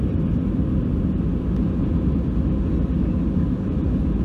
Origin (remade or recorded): recorded